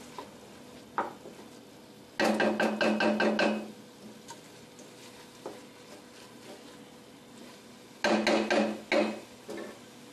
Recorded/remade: recorded